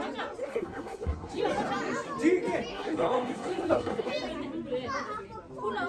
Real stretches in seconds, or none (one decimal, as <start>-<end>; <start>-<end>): 0.0-0.4; 1.4-2.7; 4.1-5.9